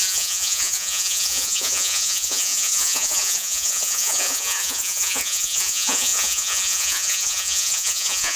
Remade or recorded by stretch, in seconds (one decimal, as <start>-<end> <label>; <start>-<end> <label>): 0.0-8.4 remade

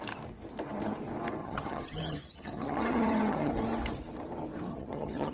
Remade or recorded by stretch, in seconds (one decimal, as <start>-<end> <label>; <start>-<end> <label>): 0.0-1.4 recorded; 1.4-3.5 remade; 3.5-4.7 recorded; 4.7-5.3 remade

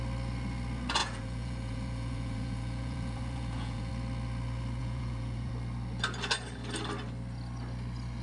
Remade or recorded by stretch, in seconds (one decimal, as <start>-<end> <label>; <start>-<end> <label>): 0.0-1.0 recorded; 1.0-3.9 remade; 3.9-4.8 recorded; 4.8-5.5 remade; 5.5-8.2 recorded

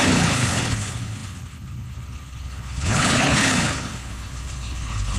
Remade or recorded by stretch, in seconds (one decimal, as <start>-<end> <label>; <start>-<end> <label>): 0.0-5.2 remade